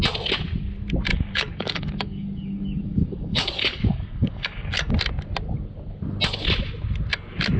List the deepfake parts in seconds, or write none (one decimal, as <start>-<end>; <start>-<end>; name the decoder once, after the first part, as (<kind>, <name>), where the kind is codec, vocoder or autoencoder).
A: 1.1-4.9 (codec, DAC)